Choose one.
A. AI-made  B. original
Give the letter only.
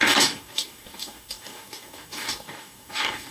A